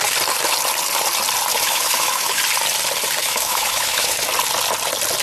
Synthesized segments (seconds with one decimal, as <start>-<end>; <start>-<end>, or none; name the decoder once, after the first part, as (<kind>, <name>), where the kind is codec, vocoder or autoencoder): 1.5-2.4 (autoencoder, DAC-VAE); 3.2-4.2